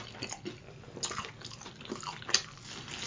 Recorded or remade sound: recorded